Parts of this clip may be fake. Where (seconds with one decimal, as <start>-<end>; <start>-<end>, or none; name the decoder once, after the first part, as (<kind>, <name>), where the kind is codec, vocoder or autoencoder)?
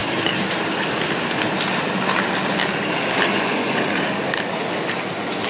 3.3-3.8 (vocoder, Vocos)